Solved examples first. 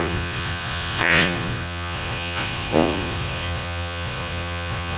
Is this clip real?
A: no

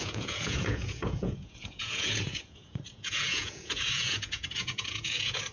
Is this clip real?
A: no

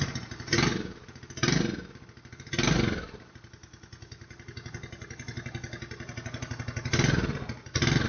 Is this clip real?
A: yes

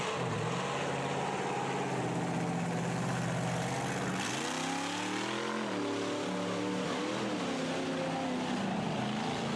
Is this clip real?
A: yes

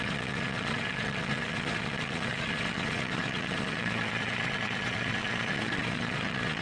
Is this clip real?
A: no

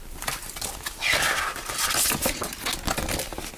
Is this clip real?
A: yes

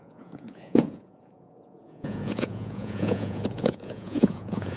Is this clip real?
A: no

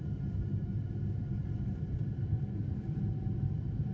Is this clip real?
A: yes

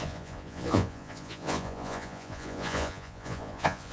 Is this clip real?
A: no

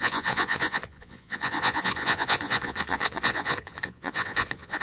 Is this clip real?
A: no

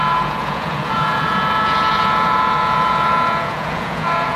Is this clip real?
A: no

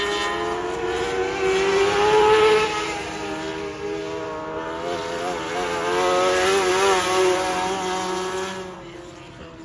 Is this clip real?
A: yes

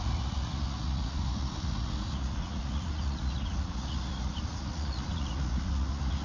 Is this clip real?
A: no